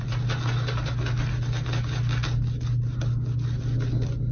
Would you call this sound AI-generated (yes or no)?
no